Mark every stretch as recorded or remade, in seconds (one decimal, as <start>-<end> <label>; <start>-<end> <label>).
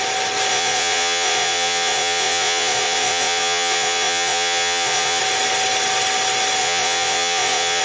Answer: 0.0-0.5 recorded; 0.5-5.2 remade; 5.2-6.6 recorded; 6.6-7.8 remade